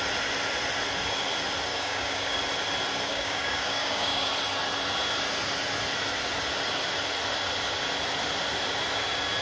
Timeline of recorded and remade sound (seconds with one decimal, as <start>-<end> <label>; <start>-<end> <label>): 0.0-1.7 recorded; 1.7-2.4 remade; 2.4-3.1 recorded; 3.1-4.3 remade; 4.3-9.4 recorded

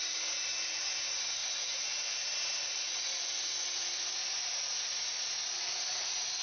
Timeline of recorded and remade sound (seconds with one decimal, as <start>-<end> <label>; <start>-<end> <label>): 0.0-6.4 recorded

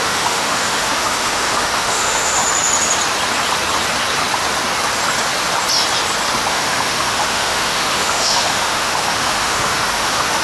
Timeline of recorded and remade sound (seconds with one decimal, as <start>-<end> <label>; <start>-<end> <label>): 0.0-2.4 remade; 2.4-6.5 recorded; 6.5-10.4 remade

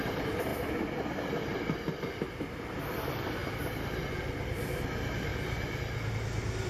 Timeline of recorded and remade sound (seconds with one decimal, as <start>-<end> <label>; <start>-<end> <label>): 0.0-0.5 remade; 0.5-2.0 recorded; 2.0-3.4 remade; 3.4-4.1 recorded; 4.1-5.3 remade; 5.3-6.1 recorded; 6.1-6.7 remade

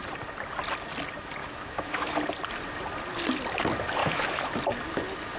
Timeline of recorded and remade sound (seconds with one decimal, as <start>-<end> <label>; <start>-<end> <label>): 0.0-1.4 recorded; 1.4-2.1 remade; 2.1-4.0 recorded; 4.0-4.6 remade; 4.6-5.4 recorded